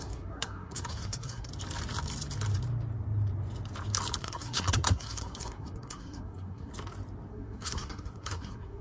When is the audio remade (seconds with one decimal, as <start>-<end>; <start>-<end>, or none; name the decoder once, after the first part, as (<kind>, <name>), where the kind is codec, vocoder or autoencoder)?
0.0-1.5 (codec, SNAC); 4.2-6.7; 7.3-8.8